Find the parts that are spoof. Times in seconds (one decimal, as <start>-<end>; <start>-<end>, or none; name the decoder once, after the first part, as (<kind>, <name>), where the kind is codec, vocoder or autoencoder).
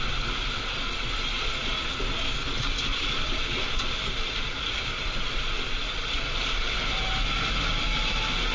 2.9-7.0 (vocoder, BigVGAN v2)